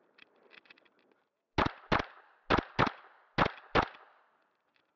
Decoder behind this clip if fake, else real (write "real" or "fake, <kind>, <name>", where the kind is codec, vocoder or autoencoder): real